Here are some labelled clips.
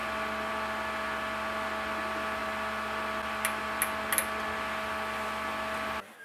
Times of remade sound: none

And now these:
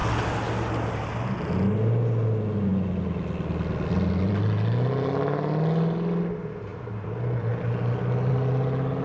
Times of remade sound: none

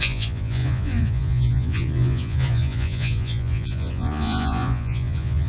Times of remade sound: 0.0-5.5 (vocoder, Vocos)

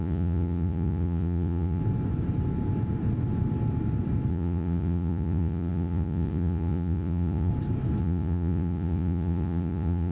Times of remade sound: 0.0-1.8 (vocoder, Vocos); 4.3-7.5; 8.0-10.1